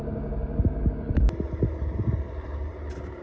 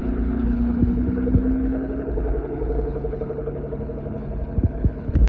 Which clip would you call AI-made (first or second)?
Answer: second